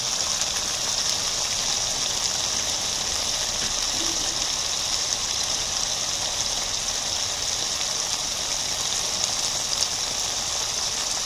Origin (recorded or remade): recorded